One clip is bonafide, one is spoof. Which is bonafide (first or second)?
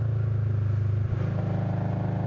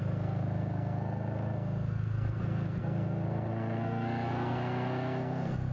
first